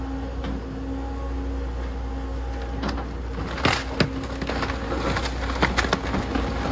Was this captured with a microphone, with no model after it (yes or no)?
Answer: yes